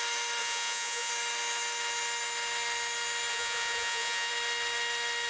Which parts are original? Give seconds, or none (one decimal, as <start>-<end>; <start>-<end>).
0.0-0.4; 1.1-3.3; 4.3-5.3